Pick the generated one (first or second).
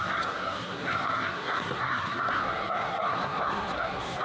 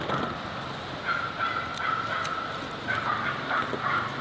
first